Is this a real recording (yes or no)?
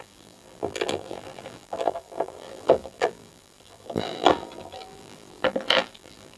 no